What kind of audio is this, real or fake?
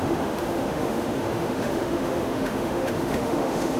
fake